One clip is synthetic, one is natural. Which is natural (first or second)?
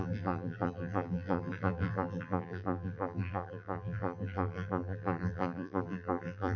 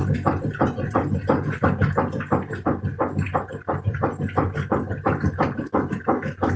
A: second